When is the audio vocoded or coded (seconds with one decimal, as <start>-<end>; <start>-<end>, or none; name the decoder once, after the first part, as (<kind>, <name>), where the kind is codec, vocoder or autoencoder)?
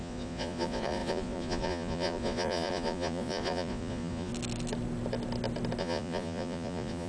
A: 0.0-4.3 (vocoder, Vocos); 5.8-7.1